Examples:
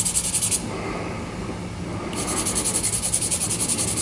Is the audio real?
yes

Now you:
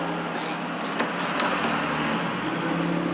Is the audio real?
yes